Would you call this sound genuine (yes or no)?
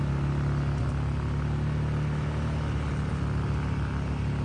yes